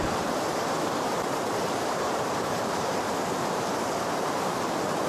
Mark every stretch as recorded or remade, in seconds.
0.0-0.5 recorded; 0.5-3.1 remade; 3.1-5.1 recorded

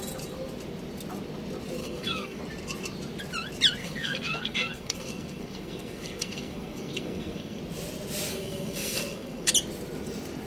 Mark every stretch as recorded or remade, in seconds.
0.0-1.8 recorded; 1.8-2.4 remade; 2.4-3.8 recorded; 3.8-7.6 remade; 7.6-8.3 recorded; 8.3-9.5 remade; 9.5-10.5 recorded

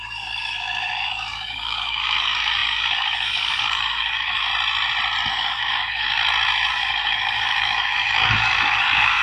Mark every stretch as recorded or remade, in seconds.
0.0-4.5 remade; 4.5-5.3 recorded; 5.3-6.2 remade; 6.2-6.7 recorded; 6.7-9.2 remade

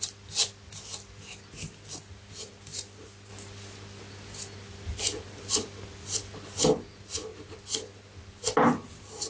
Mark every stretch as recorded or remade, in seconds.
0.0-9.3 recorded

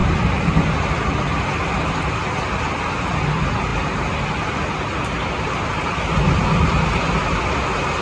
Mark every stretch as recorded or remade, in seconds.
0.0-0.5 remade; 0.5-2.2 recorded; 2.2-2.8 remade; 2.8-8.0 recorded

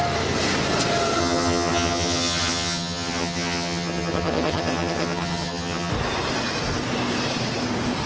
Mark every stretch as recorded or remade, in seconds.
0.0-1.2 recorded; 1.2-5.9 remade; 5.9-8.1 recorded